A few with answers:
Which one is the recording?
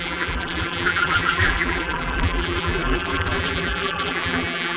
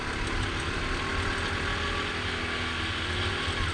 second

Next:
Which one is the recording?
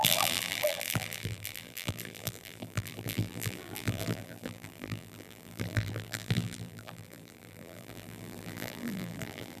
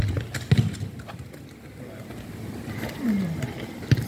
second